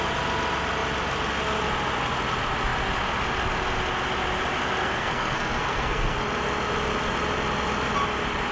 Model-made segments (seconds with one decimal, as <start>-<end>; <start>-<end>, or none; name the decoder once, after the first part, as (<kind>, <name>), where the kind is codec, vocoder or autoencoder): 4.8-6.2 (codec, SNAC)